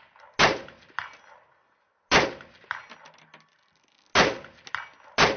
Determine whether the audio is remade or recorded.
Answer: recorded